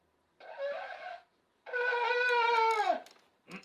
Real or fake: real